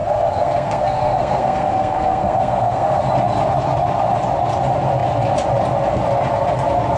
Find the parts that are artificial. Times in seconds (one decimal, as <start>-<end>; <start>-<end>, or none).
0.0-3.0

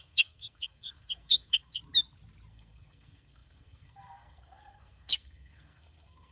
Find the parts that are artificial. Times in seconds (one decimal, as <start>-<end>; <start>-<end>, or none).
0.0-1.8; 2.5-6.3

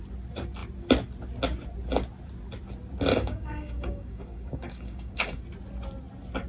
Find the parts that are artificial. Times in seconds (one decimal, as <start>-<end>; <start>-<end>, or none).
3.1-5.4